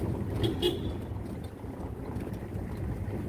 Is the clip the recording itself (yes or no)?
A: yes